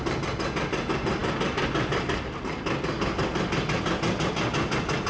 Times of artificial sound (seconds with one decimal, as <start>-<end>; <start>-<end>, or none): none